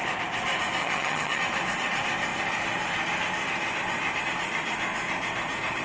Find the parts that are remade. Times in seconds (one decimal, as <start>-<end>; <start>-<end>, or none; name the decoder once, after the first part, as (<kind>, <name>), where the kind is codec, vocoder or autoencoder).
0.8-1.4 (vocoder, HiFi-GAN)